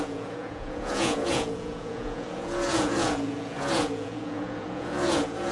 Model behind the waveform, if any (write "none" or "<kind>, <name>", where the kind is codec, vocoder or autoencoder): vocoder, Vocos